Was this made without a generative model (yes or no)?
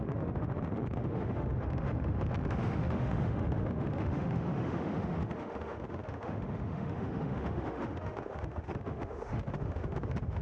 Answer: no